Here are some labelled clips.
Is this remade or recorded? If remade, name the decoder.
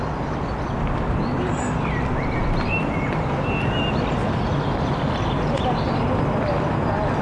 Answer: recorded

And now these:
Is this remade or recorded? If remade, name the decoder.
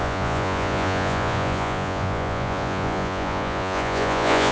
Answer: remade, vocoder, Vocos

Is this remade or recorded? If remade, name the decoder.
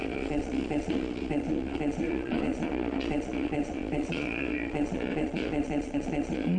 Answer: remade, vocoder, Vocos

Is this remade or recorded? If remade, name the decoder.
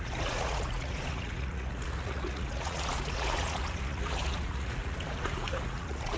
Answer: remade, vocoder, Vocos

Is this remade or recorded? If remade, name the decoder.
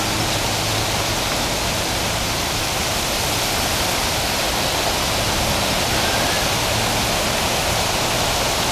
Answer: recorded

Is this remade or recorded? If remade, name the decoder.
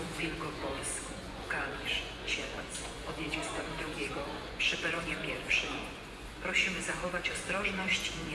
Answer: remade, vocoder, Vocos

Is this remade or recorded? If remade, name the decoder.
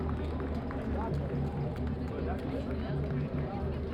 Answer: recorded